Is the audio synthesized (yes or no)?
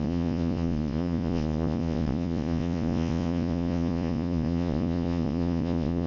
yes